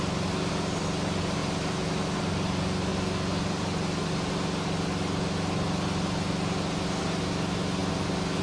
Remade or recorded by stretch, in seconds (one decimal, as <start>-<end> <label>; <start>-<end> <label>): 0.0-8.4 recorded

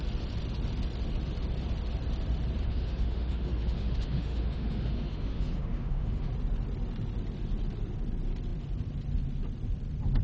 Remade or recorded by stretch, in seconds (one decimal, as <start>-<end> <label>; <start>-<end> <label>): 0.0-2.6 recorded; 2.6-6.3 remade; 6.3-10.2 recorded